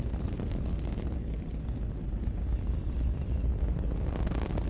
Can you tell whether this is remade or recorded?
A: recorded